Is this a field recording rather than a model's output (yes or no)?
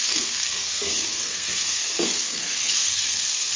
no